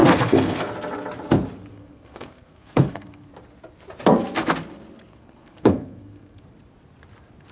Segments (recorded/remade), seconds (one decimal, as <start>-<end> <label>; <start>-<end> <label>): 0.0-0.7 remade; 0.7-1.7 recorded; 1.7-3.3 remade; 3.3-5.1 recorded; 5.1-6.4 remade; 6.4-7.5 recorded